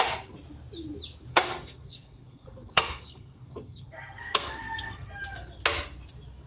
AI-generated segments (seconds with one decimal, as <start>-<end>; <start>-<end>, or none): 1.3-5.2